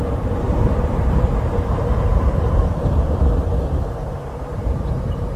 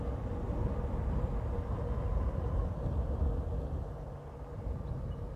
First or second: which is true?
second